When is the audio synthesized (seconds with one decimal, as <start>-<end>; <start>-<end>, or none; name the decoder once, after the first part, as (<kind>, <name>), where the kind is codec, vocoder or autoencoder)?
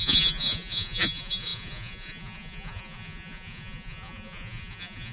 0.0-5.1 (vocoder, Vocos)